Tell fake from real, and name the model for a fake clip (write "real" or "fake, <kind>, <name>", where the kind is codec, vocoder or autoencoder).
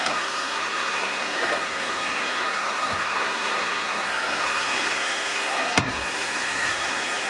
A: fake, codec, SNAC